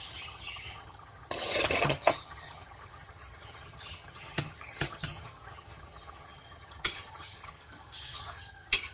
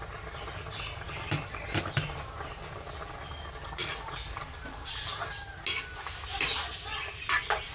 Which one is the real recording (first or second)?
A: second